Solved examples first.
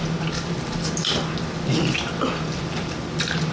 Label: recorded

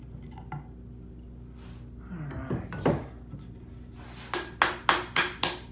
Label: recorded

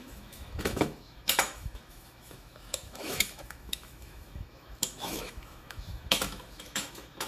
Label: remade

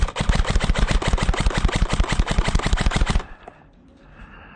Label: recorded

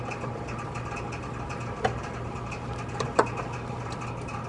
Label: recorded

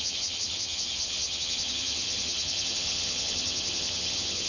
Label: remade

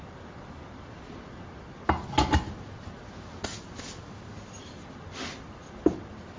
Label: recorded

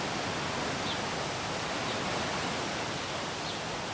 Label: recorded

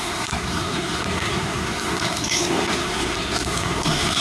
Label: remade